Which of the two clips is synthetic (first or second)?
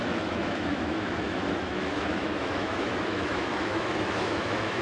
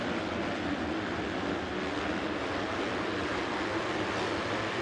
first